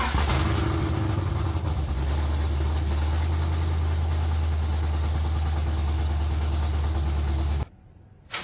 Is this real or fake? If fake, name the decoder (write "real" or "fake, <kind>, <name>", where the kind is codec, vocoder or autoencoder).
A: real